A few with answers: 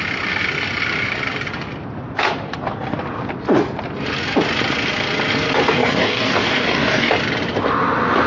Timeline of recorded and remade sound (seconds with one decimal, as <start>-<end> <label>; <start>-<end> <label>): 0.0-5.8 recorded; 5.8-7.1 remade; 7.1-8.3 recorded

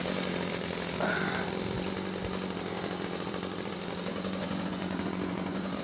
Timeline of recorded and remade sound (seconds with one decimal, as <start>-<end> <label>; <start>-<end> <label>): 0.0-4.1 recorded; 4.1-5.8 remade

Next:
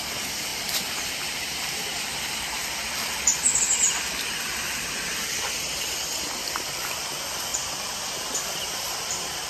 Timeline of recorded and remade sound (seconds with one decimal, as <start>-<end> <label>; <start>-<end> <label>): 0.0-3.3 remade; 3.3-4.4 recorded; 4.4-9.5 remade

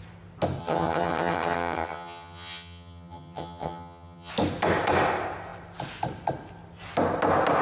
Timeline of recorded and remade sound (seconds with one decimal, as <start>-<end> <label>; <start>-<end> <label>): 0.0-0.6 recorded; 0.6-4.3 remade; 4.3-7.6 recorded

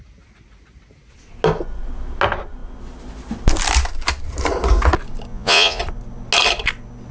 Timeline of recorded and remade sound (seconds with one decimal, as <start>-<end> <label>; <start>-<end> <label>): 0.0-5.3 recorded; 5.3-5.8 remade; 5.8-7.1 recorded